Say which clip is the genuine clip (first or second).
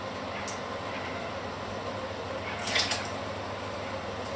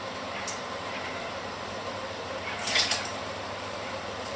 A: first